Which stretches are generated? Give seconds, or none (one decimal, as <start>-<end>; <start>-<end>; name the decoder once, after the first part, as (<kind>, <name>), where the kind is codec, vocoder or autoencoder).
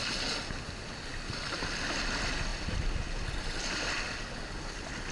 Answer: none